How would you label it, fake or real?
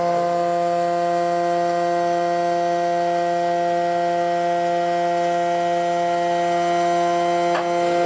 real